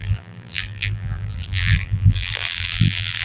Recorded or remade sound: remade